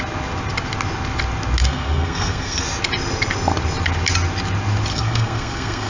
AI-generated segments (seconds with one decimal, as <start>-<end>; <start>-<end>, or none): 1.6-2.6; 4.9-5.9